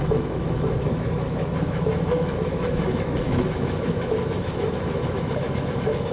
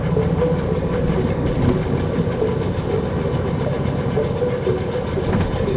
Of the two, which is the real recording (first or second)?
second